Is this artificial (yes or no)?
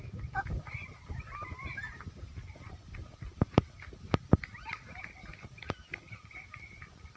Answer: yes